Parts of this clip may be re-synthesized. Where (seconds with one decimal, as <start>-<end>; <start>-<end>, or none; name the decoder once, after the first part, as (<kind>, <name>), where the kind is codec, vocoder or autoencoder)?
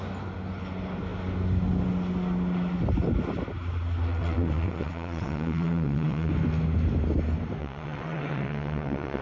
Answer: 4.1-6.3 (vocoder, WaveNeXt); 7.6-9.2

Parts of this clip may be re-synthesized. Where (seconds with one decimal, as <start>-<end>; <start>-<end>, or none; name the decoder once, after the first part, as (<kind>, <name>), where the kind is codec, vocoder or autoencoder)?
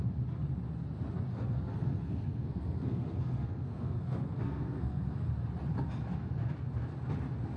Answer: 1.3-5.3 (codec, SNAC)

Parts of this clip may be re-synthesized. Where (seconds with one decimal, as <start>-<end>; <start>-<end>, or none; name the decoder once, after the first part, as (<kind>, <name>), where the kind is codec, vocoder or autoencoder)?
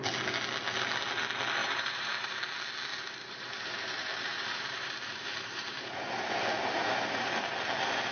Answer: 1.6-2.4 (vocoder, BigVGAN v2); 2.9-7.5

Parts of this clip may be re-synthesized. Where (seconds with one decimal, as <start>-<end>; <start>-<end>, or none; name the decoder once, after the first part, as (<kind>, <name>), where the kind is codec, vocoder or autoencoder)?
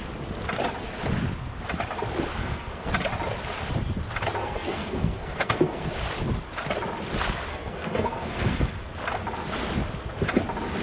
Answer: 2.4-2.9 (codec, SNAC); 4.4-5.9; 7.5-8.7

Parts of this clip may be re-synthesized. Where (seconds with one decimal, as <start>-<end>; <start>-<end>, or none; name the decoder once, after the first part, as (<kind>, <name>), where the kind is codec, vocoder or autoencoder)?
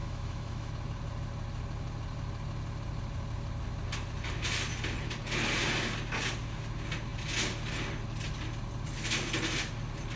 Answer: 0.0-0.7 (autoencoder, DAC-VAE)